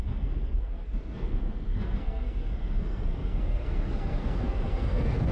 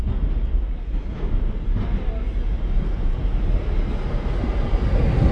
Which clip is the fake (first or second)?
first